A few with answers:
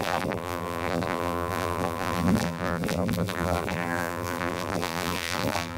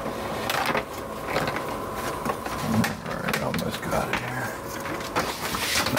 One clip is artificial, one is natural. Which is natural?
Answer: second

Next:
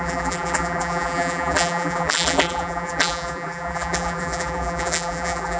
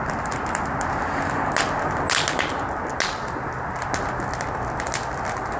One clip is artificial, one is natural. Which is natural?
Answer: second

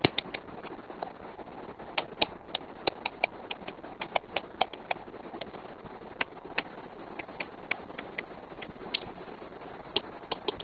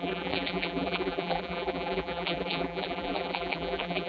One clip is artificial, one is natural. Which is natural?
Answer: first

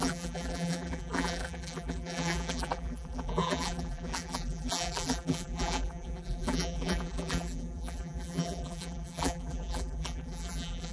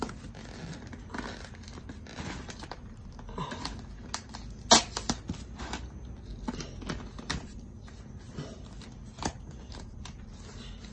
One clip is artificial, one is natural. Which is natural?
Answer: second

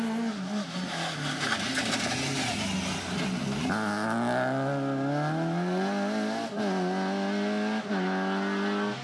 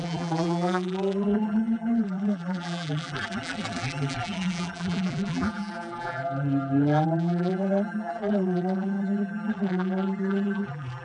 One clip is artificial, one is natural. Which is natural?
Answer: first